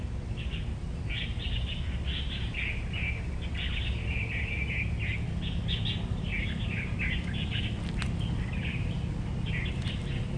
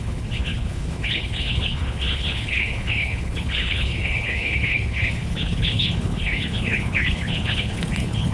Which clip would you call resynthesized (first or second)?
second